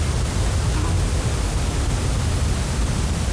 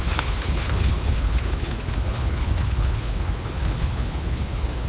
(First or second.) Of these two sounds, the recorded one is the first